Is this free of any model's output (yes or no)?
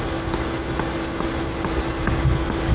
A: yes